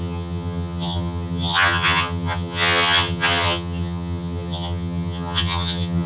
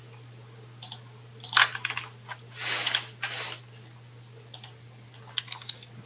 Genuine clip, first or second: second